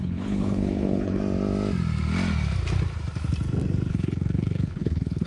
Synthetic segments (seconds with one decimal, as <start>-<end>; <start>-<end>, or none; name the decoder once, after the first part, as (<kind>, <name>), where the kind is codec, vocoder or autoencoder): 0.0-1.2 (codec, HILCodec); 3.9-5.3